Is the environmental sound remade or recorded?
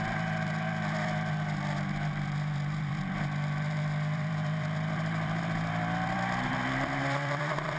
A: remade